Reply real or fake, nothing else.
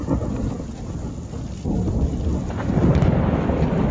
real